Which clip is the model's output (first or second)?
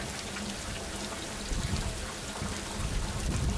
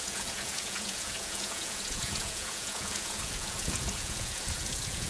second